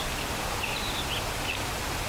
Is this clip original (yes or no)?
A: yes